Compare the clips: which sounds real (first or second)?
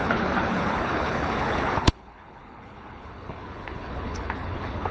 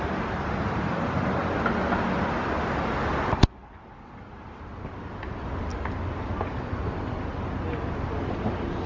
second